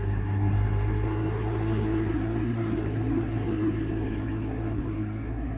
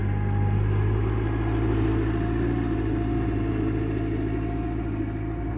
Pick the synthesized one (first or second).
first